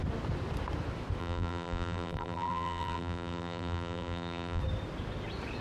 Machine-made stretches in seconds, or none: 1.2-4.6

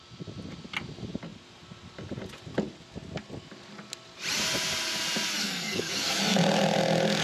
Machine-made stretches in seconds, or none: 5.4-6.2

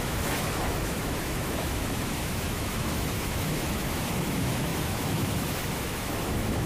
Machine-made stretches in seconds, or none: 0.0-6.7

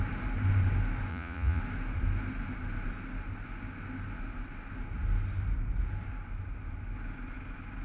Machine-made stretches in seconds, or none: 1.1-1.6

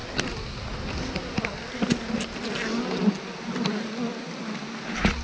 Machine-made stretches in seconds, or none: none

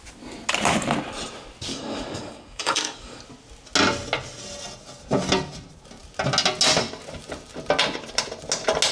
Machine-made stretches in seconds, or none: 1.7-3.2